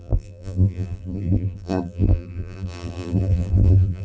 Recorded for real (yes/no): no